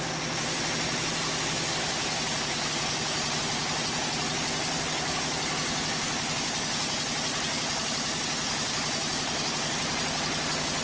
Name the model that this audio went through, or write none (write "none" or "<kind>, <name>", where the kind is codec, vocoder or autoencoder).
none